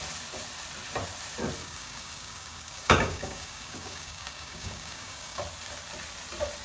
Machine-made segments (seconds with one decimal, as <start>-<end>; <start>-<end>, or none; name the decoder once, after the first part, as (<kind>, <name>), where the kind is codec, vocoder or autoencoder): 1.6-5.4 (codec, DAC)